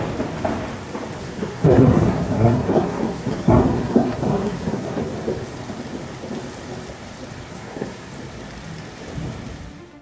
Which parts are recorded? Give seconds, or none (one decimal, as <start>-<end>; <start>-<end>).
0.0-1.2; 5.0-7.5; 8.1-10.0